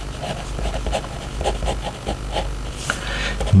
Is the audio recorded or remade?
recorded